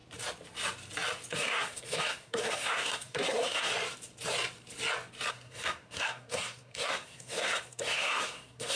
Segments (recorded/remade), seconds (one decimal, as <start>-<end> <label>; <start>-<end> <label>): 0.0-1.3 recorded; 1.3-3.7 remade; 3.7-5.3 recorded; 5.3-8.8 remade